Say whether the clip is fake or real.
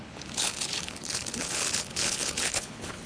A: fake